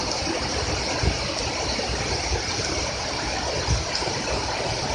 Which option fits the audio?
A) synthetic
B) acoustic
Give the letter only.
B